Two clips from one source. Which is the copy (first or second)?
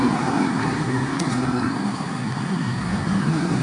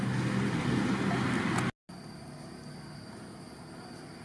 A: first